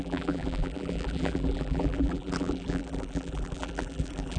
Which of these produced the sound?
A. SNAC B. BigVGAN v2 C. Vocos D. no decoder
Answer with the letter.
B